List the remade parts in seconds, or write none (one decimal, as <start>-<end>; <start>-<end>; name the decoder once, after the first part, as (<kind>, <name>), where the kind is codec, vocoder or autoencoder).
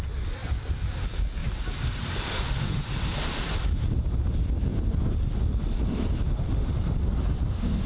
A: 1.4-2.1 (vocoder, BigVGAN v2); 2.9-3.5; 4.7-5.4